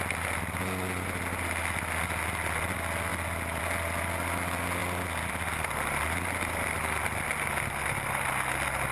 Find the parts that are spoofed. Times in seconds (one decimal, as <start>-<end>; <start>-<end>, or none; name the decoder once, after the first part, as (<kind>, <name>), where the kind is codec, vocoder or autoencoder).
none